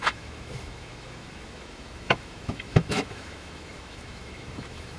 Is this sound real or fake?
fake